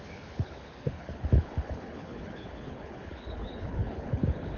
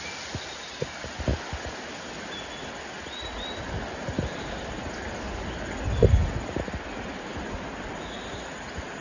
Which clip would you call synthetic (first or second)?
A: first